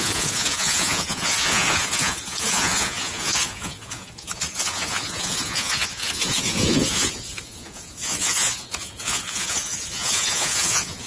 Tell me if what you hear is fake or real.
fake